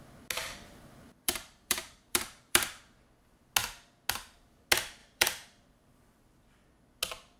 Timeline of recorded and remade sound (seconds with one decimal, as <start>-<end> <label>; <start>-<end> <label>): 0.0-0.4 recorded; 0.4-2.8 remade; 2.8-5.0 recorded; 5.0-6.0 remade; 6.0-7.4 recorded